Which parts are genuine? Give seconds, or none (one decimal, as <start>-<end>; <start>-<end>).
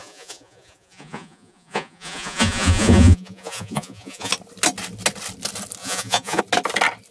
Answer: 4.3-5.8; 6.4-7.1